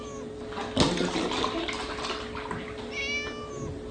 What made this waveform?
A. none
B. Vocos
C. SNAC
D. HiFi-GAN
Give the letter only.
A